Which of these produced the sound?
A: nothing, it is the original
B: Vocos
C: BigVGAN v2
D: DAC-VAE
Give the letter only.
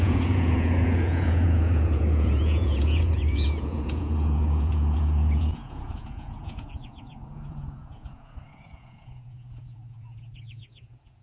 B